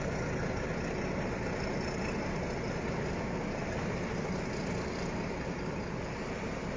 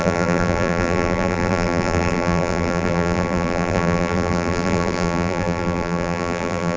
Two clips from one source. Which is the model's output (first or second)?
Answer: second